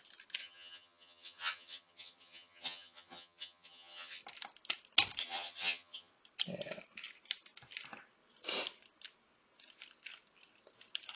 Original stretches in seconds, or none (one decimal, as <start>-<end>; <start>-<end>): 0.0-0.4; 4.2-5.2; 6.1-11.2